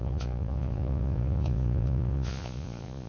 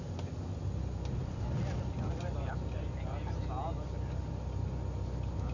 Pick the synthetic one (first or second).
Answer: first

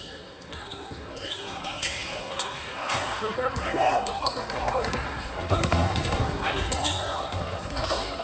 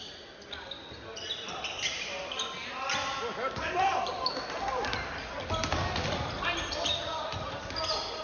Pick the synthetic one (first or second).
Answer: first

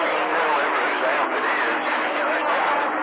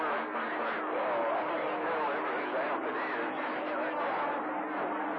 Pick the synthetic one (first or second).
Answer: first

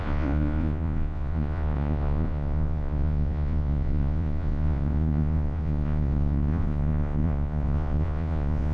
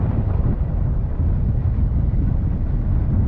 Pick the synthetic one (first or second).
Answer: first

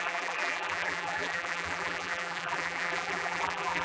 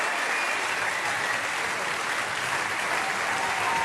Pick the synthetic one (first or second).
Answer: first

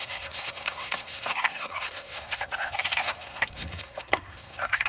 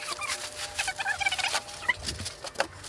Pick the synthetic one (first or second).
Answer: first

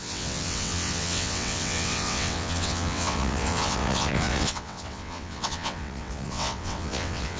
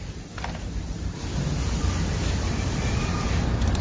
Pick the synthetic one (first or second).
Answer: first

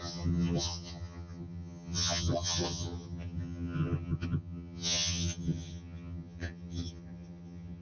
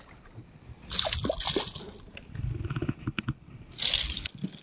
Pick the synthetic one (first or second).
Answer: first